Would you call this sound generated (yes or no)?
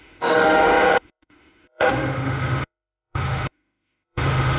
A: yes